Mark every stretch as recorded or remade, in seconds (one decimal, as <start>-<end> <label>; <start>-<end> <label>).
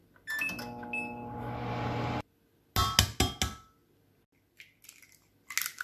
0.0-5.8 recorded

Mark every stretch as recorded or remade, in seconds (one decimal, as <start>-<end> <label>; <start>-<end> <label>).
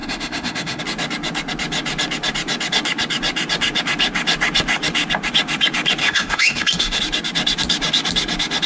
0.0-0.8 remade; 0.8-6.0 recorded; 6.0-7.0 remade; 7.0-8.7 recorded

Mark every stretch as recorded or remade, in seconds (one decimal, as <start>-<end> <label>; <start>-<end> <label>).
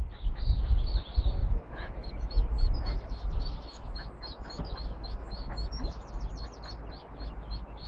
0.0-1.4 recorded; 1.4-6.1 remade; 6.1-7.0 recorded; 7.0-7.9 remade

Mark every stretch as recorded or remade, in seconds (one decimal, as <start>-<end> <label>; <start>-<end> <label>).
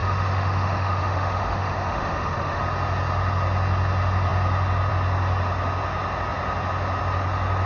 0.0-2.6 remade; 2.6-7.7 recorded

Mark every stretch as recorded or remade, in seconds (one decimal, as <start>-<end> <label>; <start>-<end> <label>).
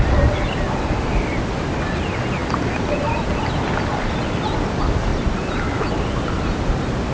0.0-7.1 recorded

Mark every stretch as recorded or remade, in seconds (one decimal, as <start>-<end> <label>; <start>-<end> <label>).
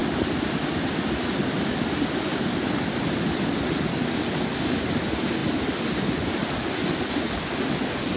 0.0-8.2 recorded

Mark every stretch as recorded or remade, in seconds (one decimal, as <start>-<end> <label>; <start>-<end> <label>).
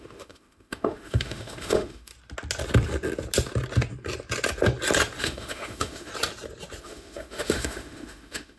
0.0-2.1 remade; 2.1-5.2 recorded; 5.2-6.1 remade; 6.1-6.8 recorded; 6.8-8.6 remade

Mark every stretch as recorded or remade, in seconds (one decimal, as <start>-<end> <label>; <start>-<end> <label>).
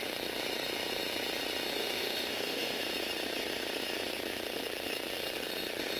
0.0-1.8 recorded; 1.8-2.8 remade; 2.8-6.0 recorded